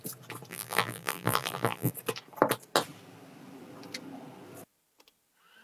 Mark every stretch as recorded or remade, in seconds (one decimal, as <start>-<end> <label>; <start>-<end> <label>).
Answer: 0.0-0.5 recorded; 0.5-1.9 remade; 1.9-5.6 recorded